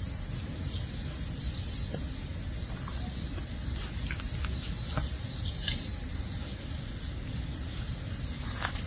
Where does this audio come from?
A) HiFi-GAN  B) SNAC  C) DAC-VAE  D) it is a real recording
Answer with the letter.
D